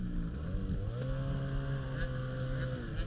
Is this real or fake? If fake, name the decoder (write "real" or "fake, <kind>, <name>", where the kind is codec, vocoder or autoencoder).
real